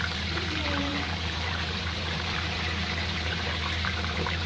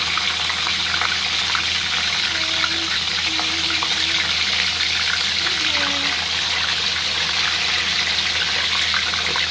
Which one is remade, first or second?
first